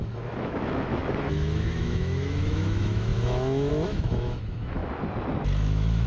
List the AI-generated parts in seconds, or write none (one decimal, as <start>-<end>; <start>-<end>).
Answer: 0.0-4.8; 5.6-6.1